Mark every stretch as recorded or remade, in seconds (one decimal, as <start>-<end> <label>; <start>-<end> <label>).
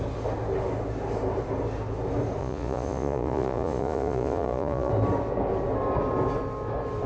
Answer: 0.0-2.4 recorded; 2.4-4.9 remade; 4.9-7.1 recorded